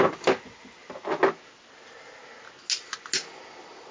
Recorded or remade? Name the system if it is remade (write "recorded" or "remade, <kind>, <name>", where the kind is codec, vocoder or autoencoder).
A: recorded